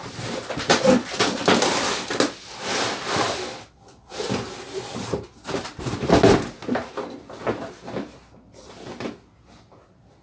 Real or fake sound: real